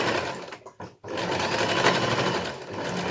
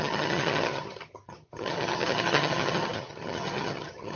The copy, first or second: second